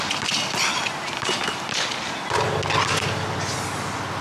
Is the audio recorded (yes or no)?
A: yes